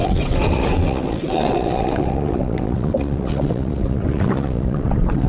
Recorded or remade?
remade